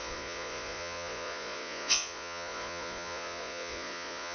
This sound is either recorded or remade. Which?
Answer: remade